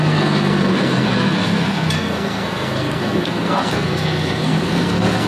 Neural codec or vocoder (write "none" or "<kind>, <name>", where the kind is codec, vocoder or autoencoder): codec, SNAC